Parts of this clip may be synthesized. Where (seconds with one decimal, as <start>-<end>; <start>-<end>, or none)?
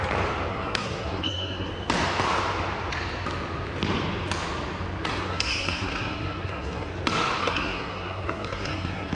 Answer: 0.5-1.7; 5.1-6.9; 7.4-9.1